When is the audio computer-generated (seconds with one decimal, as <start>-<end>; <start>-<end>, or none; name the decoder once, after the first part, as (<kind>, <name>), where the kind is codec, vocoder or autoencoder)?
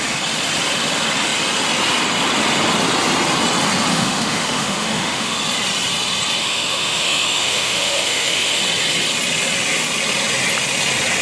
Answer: 3.9-5.4 (autoencoder, DAC-VAE); 6.4-8.6